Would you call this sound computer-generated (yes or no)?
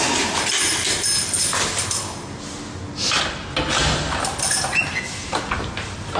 no